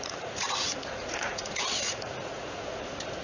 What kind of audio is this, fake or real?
fake